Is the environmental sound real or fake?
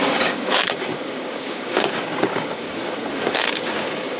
fake